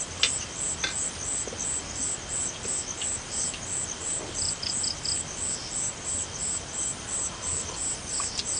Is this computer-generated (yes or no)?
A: no